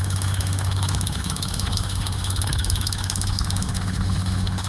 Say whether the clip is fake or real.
fake